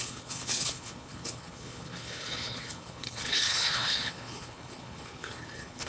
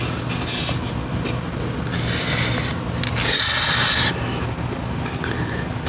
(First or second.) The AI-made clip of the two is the first